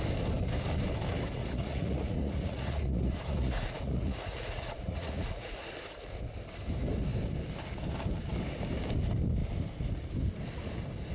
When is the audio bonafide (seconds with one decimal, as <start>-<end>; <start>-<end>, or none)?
0.0-1.4; 5.7-11.1